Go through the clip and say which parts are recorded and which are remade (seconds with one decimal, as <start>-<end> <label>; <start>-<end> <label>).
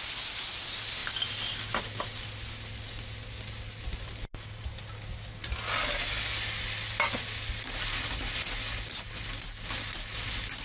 0.0-10.6 recorded